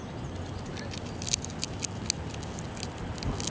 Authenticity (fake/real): real